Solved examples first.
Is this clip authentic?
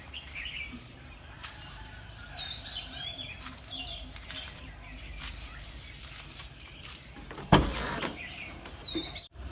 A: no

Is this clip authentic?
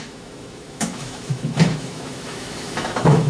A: no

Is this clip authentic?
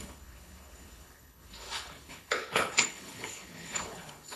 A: no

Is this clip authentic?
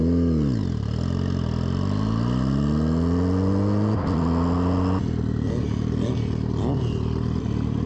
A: yes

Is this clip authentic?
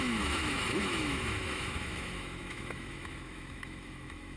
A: no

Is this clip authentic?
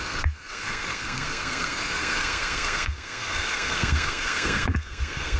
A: no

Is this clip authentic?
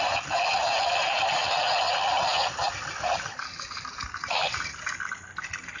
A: yes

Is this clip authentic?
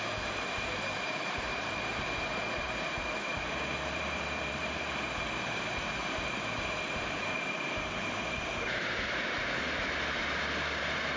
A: no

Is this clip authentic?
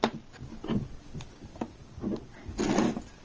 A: yes